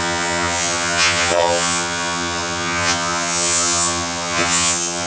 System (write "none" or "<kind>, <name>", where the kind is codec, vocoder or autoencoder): vocoder, HiFi-GAN